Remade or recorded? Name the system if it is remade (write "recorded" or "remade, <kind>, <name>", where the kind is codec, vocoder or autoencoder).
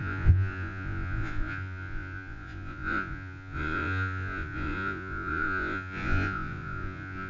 remade, vocoder, Vocos